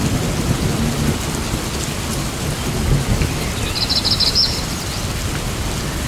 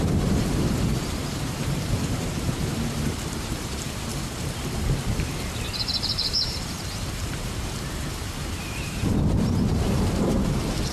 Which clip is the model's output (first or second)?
second